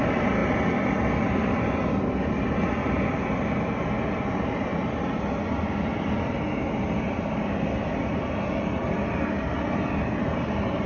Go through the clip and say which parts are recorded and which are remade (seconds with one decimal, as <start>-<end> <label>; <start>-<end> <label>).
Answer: 0.0-10.9 recorded